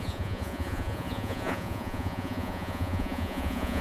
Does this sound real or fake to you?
fake